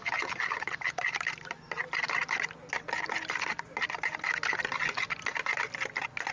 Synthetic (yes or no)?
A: no